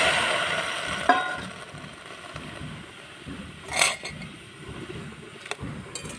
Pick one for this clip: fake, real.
real